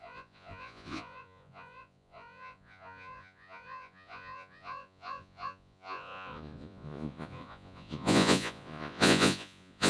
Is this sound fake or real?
fake